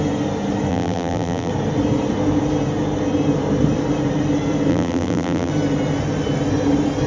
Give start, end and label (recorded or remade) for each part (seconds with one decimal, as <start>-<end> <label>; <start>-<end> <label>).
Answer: 0.0-0.7 recorded; 0.7-1.5 remade; 1.5-4.7 recorded; 4.7-5.5 remade; 5.5-7.1 recorded